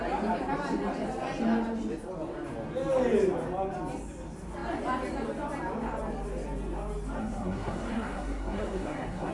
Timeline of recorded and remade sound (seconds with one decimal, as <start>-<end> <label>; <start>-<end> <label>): 0.0-7.2 recorded; 7.2-9.3 remade